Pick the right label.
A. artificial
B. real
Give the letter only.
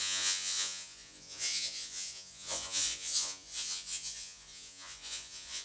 A